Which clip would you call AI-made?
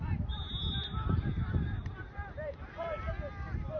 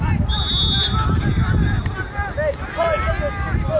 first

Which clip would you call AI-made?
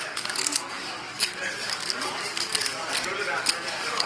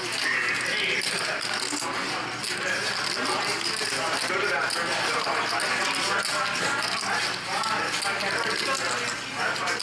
first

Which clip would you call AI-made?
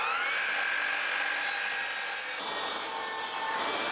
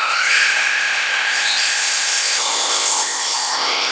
second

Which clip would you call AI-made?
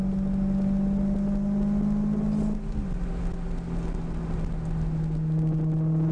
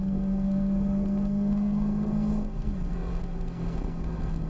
second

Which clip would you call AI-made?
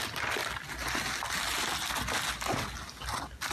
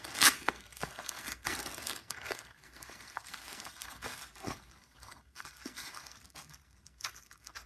second